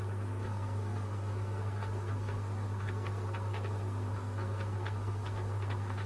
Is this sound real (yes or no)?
no